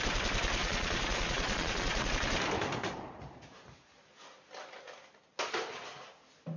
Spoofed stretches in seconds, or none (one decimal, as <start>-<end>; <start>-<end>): 0.6-2.1